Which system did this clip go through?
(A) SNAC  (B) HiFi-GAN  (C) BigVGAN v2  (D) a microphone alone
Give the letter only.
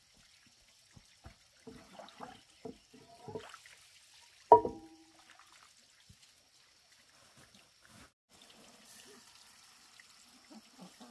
D